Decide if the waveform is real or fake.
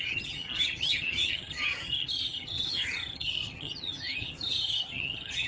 fake